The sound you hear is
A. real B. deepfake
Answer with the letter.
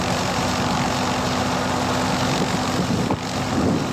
A